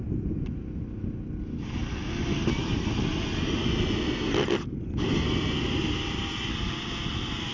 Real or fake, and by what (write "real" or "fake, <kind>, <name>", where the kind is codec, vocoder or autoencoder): real